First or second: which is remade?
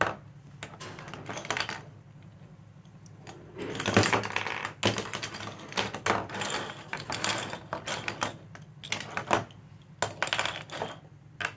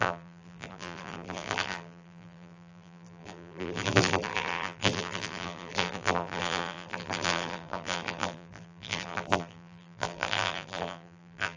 second